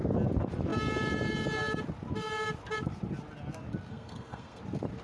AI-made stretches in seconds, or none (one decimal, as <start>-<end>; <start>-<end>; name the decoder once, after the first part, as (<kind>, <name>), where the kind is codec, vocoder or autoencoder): 3.9-4.6 (codec, SNAC)